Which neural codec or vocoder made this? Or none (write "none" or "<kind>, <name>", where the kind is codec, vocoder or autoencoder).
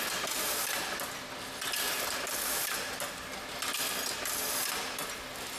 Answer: none